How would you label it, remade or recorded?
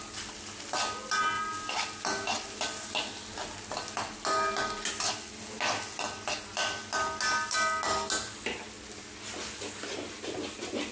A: recorded